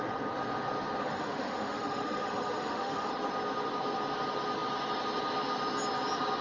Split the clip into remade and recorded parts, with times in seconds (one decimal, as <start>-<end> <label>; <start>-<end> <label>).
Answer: 0.0-1.0 recorded; 1.0-3.1 remade; 3.1-6.4 recorded